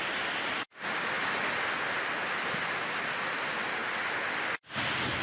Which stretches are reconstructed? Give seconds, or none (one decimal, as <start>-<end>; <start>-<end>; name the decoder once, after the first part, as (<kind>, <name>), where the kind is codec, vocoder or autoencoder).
none